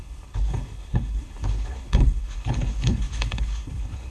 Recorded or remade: remade